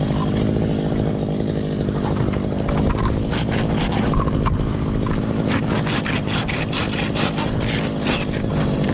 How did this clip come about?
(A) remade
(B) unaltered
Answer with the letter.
B